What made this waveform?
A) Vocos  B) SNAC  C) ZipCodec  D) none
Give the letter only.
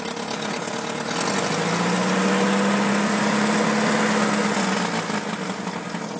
D